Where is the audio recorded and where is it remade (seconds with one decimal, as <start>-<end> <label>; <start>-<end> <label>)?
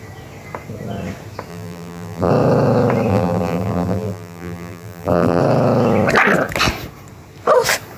0.0-1.5 recorded; 1.5-2.3 remade; 2.3-3.1 recorded; 3.1-5.4 remade; 5.4-8.0 recorded